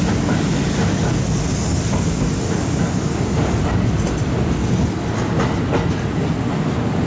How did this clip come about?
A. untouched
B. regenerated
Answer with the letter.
A